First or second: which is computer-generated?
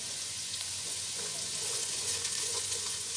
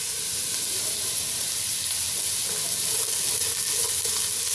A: first